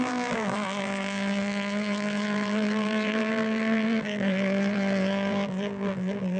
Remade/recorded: remade